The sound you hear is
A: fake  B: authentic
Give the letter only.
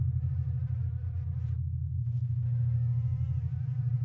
B